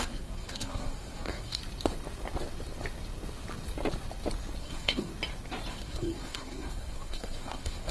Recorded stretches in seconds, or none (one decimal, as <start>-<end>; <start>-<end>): 1.6-4.6; 5.1-5.7